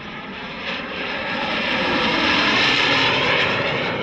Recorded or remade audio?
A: remade